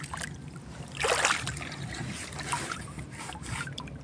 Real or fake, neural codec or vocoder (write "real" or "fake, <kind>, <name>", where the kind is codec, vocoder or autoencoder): real